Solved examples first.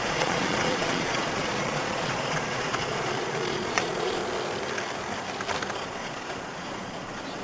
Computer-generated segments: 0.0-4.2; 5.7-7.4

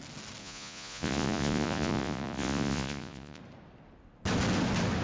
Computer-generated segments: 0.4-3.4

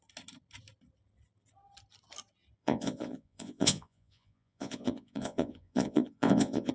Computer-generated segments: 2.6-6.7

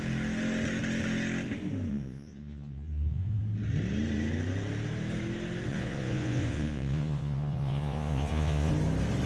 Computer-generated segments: 1.9-3.4; 5.7-8.7